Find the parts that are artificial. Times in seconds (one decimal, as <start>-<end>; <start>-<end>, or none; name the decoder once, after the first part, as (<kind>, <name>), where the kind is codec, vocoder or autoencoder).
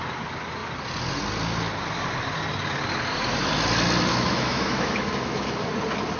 4.1-5.7 (autoencoder, DAC-VAE)